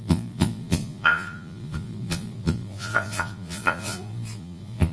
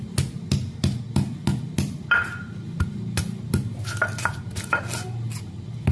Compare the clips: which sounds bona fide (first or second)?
second